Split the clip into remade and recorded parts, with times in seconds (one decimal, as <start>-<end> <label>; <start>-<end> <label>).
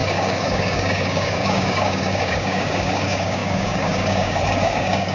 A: 0.0-5.1 remade